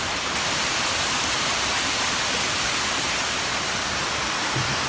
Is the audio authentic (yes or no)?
yes